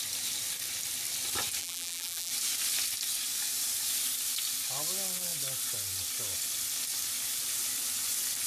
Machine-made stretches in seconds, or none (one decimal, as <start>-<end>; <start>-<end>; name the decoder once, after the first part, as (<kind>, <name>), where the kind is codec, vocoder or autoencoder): 1.6-2.3 (vocoder, BigVGAN v2)